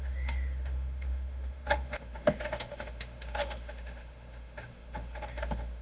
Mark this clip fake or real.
fake